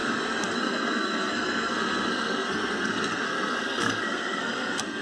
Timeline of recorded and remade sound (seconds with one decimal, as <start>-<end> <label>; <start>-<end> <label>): 0.0-5.0 remade